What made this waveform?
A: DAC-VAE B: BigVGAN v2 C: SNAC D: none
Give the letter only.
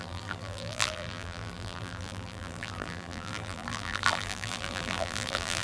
B